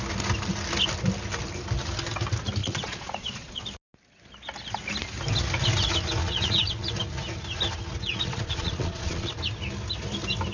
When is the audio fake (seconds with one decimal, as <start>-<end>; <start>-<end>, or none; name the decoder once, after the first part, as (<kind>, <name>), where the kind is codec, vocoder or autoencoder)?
2.6-3.6 (vocoder, Vocos); 6.2-6.9; 8.1-9.3